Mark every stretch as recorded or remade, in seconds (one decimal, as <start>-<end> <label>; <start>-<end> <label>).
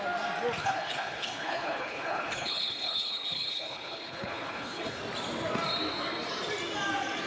0.0-0.6 recorded; 0.6-5.0 remade; 5.0-7.3 recorded